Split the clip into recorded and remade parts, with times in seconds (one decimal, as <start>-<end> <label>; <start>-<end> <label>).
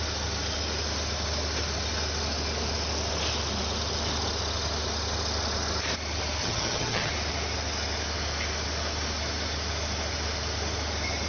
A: 0.0-6.4 recorded; 6.4-7.1 remade; 7.1-11.3 recorded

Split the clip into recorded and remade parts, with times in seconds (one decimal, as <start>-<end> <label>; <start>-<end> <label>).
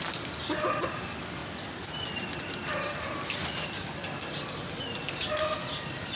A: 0.0-6.2 recorded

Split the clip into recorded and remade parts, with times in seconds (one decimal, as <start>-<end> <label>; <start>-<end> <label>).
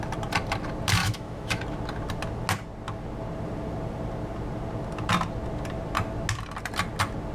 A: 0.0-1.0 recorded; 1.0-1.6 remade; 1.6-7.3 recorded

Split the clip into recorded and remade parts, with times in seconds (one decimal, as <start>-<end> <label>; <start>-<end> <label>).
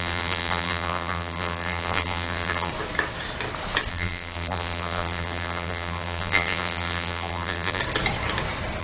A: 0.0-2.7 remade; 2.7-3.9 recorded; 3.9-7.8 remade; 7.8-8.8 recorded